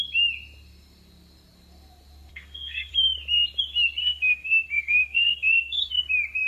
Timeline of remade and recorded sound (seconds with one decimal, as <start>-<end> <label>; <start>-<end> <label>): 0.0-2.3 recorded; 2.3-2.9 remade; 2.9-4.0 recorded; 4.0-5.9 remade; 5.9-6.5 recorded

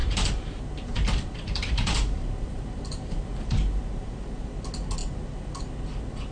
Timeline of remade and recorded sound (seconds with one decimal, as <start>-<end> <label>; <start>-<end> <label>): 0.0-3.8 remade; 3.8-6.3 recorded